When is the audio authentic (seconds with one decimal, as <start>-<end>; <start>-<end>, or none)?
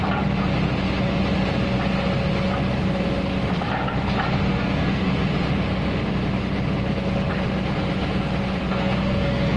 0.0-4.5; 5.1-8.6